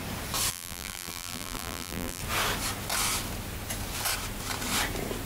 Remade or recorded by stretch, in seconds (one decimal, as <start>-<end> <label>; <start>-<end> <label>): 0.0-0.5 recorded; 0.5-2.2 remade; 2.2-5.3 recorded